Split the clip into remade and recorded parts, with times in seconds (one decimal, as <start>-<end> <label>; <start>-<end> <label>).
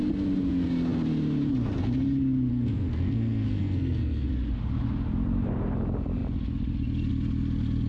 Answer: 0.0-2.5 recorded; 2.5-4.3 remade; 4.3-7.9 recorded